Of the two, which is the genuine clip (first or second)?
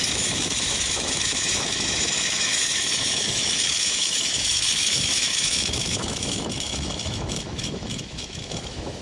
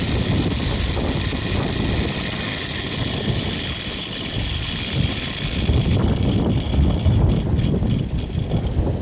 second